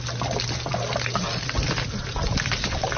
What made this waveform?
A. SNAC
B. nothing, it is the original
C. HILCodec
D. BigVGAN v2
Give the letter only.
B